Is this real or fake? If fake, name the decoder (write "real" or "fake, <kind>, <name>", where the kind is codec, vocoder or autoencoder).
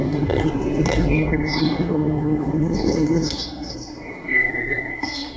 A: fake, codec, SNAC